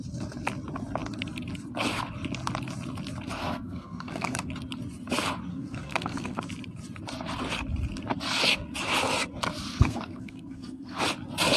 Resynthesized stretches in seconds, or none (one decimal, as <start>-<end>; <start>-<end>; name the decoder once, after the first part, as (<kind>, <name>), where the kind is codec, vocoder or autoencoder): 3.4-4.5 (codec, SNAC); 5.5-6.4; 9.7-11.0